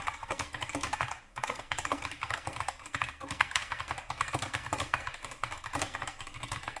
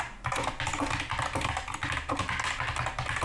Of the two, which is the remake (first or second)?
first